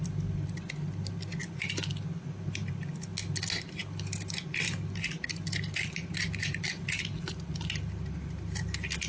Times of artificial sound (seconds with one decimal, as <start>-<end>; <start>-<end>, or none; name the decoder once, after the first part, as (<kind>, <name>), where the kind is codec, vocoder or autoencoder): none